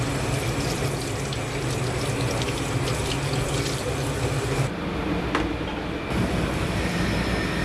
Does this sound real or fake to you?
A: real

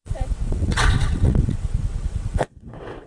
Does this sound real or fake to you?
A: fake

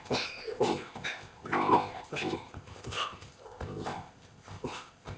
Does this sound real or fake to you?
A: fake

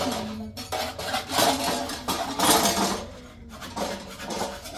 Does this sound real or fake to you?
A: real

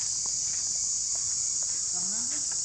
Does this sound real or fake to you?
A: real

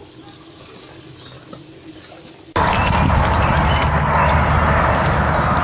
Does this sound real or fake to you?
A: real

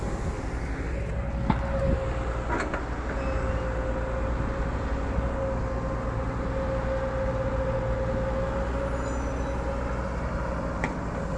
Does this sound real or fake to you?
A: real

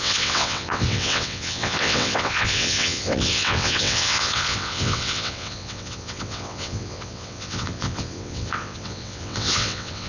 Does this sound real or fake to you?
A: fake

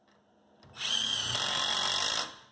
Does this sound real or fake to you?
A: real